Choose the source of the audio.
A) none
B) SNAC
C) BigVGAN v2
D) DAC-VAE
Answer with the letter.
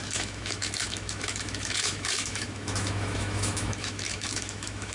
D